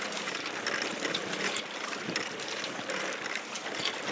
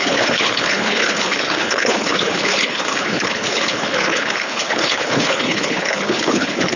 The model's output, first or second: second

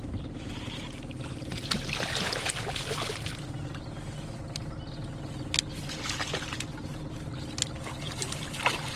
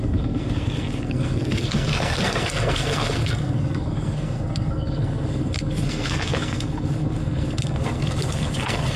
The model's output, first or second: second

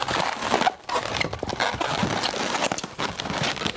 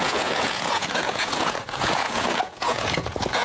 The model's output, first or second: second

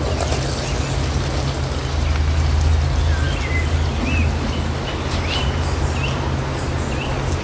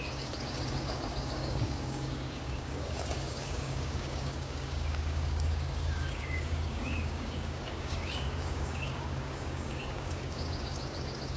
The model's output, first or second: second